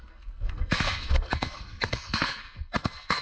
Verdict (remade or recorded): remade